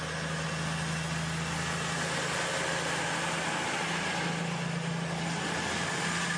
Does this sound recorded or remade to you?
recorded